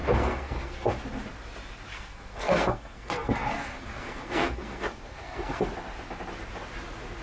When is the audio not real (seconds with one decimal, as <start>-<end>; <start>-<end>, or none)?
0.0-0.9; 1.9-5.7